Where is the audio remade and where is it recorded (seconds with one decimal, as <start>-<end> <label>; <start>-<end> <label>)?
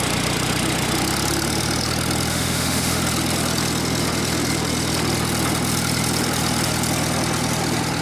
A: 0.0-2.3 recorded; 2.3-3.0 remade; 3.0-8.0 recorded